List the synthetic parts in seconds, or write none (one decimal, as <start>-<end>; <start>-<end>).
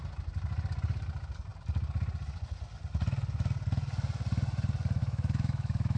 5.0-6.0